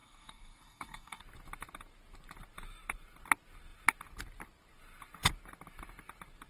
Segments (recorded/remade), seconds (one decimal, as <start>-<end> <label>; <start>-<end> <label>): 0.0-1.2 remade; 1.2-6.5 recorded